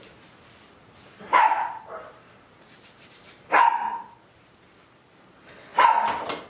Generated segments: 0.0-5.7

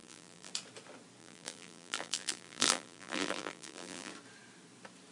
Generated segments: 0.0-0.5; 1.2-4.1